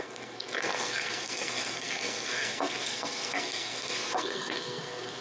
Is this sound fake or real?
fake